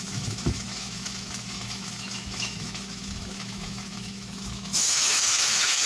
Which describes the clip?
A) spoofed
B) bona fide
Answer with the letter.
A